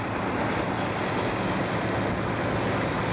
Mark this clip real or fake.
real